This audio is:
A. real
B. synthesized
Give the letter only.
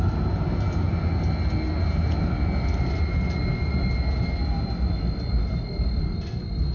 A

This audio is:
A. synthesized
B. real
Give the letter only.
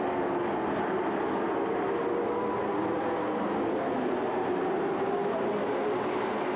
B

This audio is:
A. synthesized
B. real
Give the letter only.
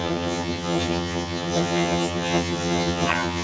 A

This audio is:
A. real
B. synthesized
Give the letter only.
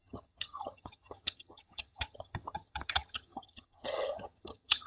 B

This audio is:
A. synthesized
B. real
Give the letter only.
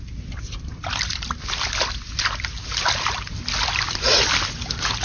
B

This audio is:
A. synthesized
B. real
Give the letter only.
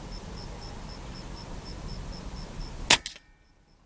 B